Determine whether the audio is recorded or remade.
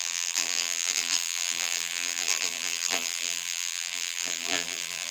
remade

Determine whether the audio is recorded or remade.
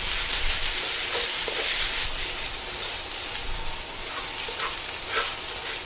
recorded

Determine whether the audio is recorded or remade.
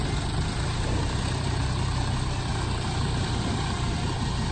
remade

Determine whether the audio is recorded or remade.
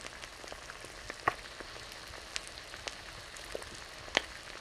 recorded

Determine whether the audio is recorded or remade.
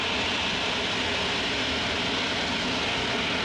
recorded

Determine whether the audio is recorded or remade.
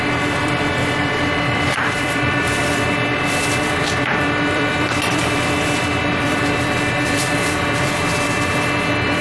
remade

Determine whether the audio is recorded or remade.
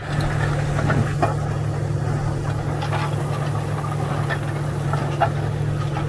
recorded